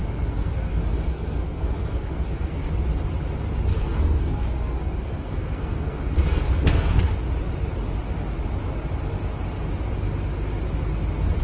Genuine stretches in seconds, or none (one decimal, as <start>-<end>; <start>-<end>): 2.7-3.7; 7.0-11.4